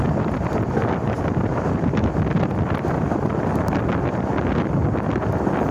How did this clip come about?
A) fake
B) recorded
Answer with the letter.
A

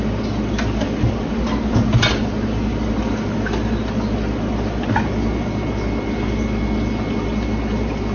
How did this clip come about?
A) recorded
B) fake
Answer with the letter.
A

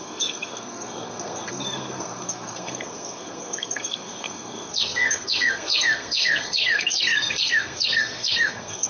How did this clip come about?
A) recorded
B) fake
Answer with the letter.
B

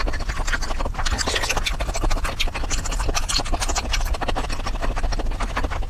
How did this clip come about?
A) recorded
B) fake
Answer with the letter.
A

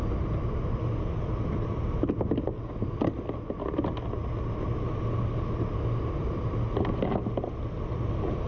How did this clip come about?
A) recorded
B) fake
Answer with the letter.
A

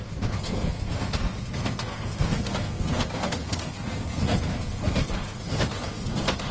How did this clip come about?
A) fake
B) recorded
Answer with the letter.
A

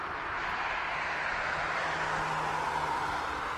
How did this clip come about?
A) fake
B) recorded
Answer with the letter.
B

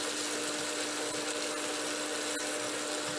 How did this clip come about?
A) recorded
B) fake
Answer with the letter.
A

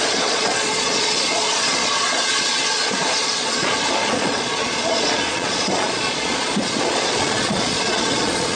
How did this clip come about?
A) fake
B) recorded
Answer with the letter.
A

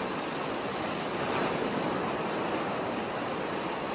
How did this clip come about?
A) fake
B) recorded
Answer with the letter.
B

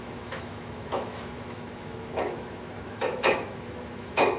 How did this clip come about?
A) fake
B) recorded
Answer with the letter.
A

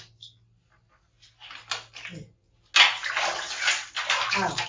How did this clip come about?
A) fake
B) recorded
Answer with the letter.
B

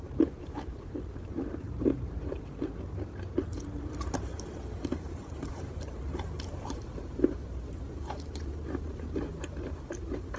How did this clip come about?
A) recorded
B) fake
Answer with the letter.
B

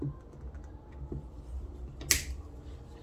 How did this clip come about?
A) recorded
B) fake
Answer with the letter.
A